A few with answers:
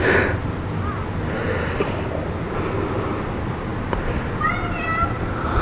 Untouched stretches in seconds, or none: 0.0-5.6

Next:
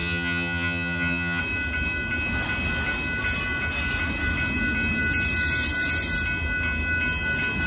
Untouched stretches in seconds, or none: 1.4-7.7

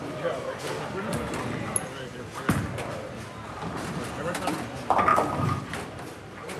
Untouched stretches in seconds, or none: 0.0-6.6

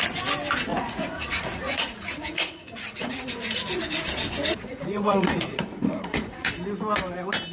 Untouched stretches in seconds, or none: 0.0-0.7; 3.8-4.4; 6.5-7.5

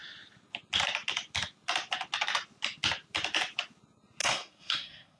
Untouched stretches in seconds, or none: 0.0-4.2

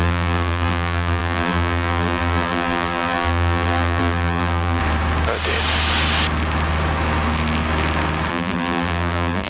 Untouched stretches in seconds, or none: 4.8-8.3